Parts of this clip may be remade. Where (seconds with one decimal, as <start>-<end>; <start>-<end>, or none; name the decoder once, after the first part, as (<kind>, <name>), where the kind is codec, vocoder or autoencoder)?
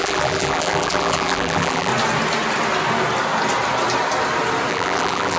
0.0-1.9 (vocoder, BigVGAN v2); 4.7-5.4